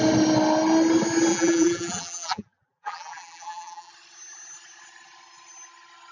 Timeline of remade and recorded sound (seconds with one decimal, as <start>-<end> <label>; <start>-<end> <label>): 0.0-1.3 recorded; 1.3-3.9 remade; 3.9-6.1 recorded

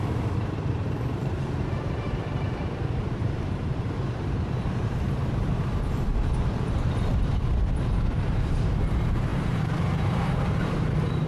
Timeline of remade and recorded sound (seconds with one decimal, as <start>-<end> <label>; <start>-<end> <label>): 0.0-11.3 remade

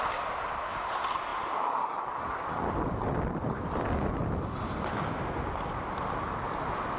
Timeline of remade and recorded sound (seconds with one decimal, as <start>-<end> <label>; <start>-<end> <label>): 0.0-7.0 recorded

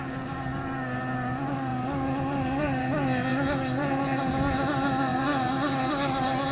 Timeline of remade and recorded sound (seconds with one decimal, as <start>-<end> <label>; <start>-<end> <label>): 0.0-6.5 recorded

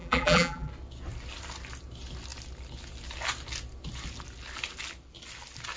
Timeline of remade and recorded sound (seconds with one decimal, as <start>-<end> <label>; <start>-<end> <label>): 0.0-0.7 remade; 0.7-5.8 recorded

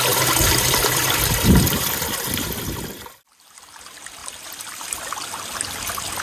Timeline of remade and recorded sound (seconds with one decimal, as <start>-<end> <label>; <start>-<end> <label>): 0.0-6.2 recorded

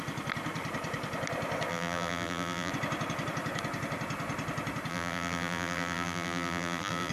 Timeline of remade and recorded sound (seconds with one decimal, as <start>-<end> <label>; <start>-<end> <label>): 0.0-1.7 recorded; 1.7-2.7 remade; 2.7-4.9 recorded; 4.9-7.1 remade